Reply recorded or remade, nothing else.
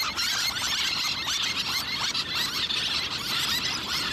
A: remade